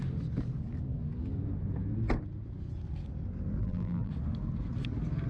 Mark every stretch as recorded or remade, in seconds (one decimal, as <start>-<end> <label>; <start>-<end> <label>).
0.0-3.6 recorded; 3.6-4.1 remade; 4.1-5.3 recorded